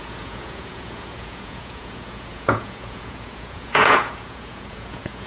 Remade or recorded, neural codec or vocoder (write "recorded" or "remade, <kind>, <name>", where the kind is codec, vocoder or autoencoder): remade, vocoder, Vocos